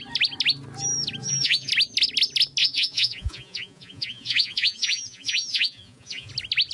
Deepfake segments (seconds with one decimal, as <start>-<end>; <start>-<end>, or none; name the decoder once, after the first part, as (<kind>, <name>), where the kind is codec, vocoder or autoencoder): 1.2-1.7 (vocoder, Vocos); 2.6-6.3